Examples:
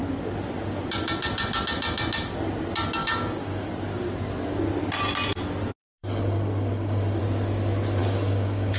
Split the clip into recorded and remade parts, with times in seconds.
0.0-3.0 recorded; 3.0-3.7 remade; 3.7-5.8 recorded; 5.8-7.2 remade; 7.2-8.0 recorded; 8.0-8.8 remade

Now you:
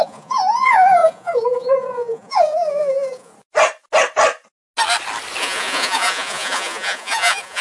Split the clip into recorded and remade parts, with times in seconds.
0.0-3.3 remade; 3.3-5.4 recorded; 5.4-7.6 remade

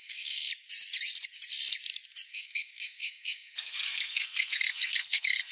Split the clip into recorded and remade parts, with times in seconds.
0.0-0.5 remade; 0.5-2.3 recorded; 2.3-5.5 remade

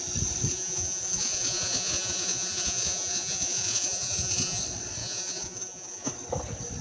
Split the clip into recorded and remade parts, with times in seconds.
0.0-0.5 recorded; 0.5-4.6 remade; 4.6-5.0 recorded; 5.0-6.1 remade; 6.1-6.8 recorded

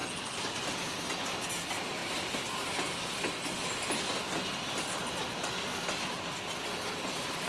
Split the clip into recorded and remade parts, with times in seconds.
0.0-7.5 recorded

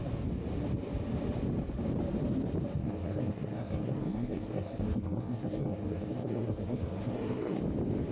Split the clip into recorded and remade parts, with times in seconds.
0.0-2.8 recorded; 2.8-7.6 remade; 7.6-8.1 recorded

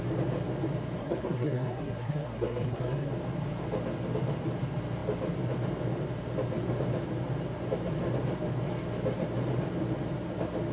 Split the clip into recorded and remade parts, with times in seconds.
0.0-1.0 recorded; 1.0-3.1 remade; 3.1-10.7 recorded